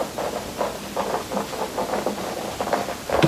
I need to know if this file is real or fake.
real